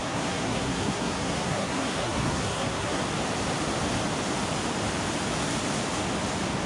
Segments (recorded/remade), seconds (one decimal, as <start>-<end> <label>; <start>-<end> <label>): 0.0-3.0 remade; 3.0-6.7 recorded